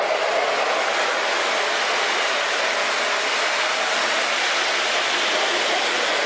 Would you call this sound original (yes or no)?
yes